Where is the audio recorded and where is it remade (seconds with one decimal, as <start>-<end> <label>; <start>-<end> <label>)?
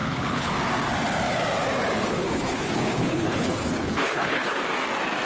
0.0-0.5 remade; 0.5-2.0 recorded; 2.0-4.6 remade; 4.6-5.2 recorded